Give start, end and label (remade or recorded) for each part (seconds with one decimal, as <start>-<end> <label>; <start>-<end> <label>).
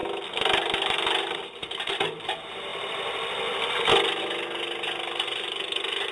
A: 0.0-6.1 recorded